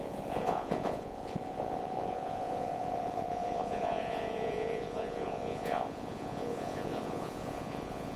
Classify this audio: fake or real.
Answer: fake